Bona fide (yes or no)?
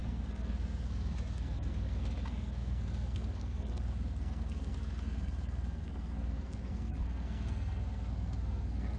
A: no